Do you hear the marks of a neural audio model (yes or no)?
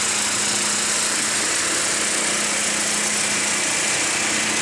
no